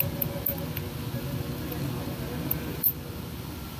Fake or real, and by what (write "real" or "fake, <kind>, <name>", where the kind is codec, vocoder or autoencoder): fake, vocoder, BigVGAN v2